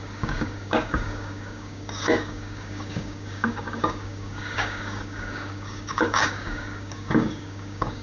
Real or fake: fake